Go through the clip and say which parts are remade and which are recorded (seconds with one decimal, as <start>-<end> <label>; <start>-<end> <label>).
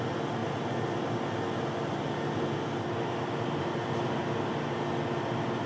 0.0-5.7 recorded